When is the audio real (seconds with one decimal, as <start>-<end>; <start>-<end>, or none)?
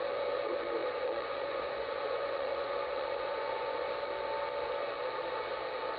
0.0-0.8; 3.9-6.0